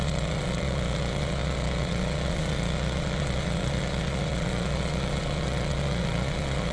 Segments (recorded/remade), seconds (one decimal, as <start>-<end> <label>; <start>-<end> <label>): 0.0-6.7 remade